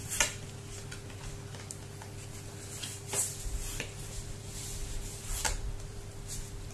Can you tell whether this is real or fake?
real